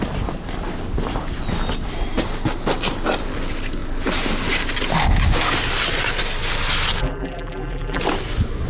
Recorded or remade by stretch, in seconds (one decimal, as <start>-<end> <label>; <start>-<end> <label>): 0.0-7.0 recorded; 7.0-8.0 remade; 8.0-8.7 recorded